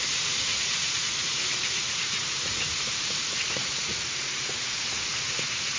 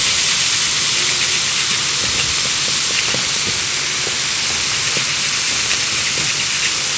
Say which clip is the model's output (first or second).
first